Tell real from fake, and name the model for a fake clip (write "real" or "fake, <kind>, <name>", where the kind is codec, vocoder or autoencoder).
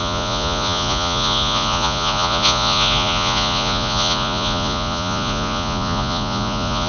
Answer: fake, vocoder, Vocos